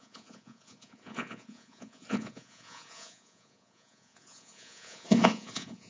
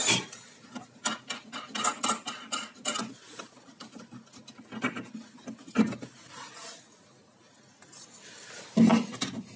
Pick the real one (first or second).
second